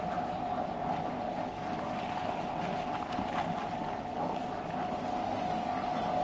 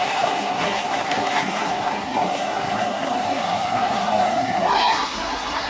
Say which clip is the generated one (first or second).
second